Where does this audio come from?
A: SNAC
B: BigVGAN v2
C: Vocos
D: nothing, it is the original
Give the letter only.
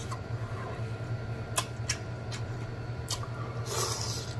D